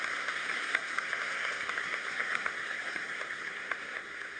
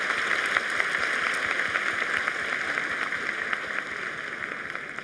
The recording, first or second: second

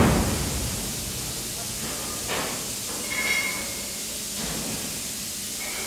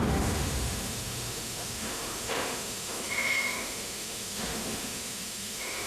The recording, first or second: first